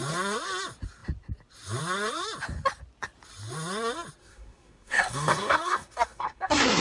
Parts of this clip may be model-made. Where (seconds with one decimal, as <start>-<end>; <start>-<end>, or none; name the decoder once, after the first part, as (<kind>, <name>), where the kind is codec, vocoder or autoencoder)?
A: 4.2-6.8 (codec, SNAC)